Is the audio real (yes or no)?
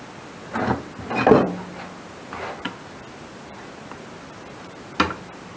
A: yes